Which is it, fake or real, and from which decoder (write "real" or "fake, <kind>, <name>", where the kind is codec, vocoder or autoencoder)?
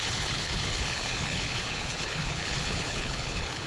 fake, codec, HILCodec